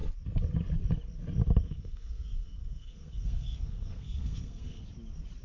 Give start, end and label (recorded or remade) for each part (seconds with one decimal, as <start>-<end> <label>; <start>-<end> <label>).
0.0-1.6 recorded; 1.6-4.8 remade; 4.8-5.4 recorded